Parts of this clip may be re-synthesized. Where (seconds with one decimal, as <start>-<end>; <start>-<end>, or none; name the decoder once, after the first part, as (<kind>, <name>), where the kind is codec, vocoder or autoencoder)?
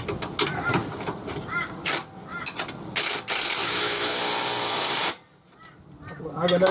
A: 3.6-4.2 (autoencoder, DAC-VAE)